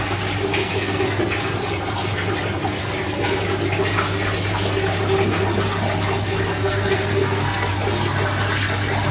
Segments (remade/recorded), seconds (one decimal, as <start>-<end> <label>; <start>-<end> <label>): 0.0-0.6 recorded; 0.6-1.2 remade; 1.2-6.5 recorded; 6.5-7.7 remade; 7.7-9.1 recorded